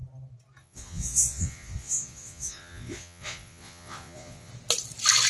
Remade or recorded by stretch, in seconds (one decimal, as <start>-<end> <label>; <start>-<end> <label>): 0.0-0.6 recorded; 0.6-4.5 remade; 4.5-5.3 recorded